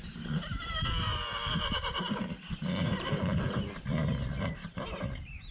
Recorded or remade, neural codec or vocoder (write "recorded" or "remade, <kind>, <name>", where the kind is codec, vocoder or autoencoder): remade, vocoder, BigVGAN v2